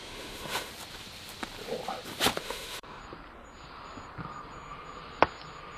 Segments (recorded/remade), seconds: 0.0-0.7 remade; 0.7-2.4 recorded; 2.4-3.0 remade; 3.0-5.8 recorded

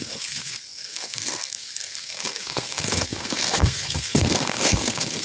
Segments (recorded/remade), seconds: 0.0-5.2 remade

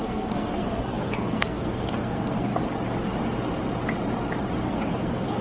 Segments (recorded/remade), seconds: 0.0-2.5 remade; 2.5-4.6 recorded; 4.6-5.4 remade